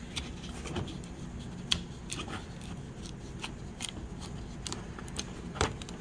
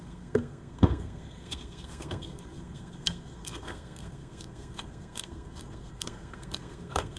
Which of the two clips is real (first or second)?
first